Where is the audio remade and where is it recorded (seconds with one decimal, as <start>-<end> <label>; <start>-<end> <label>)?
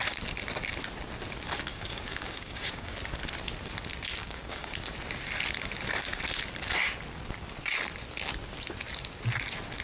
0.0-1.7 recorded; 1.7-2.9 remade; 2.9-4.2 recorded; 4.2-4.7 remade; 4.7-9.8 recorded